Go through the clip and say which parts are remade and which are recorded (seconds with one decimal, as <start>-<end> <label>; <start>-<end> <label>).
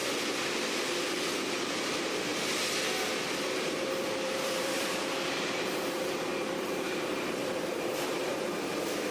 0.0-1.4 recorded; 1.4-2.3 remade; 2.3-3.8 recorded; 3.8-9.1 remade